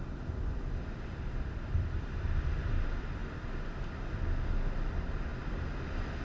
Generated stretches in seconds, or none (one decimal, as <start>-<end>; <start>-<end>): 0.0-3.2; 4.8-5.3